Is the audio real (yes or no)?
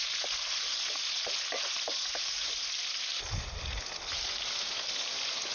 yes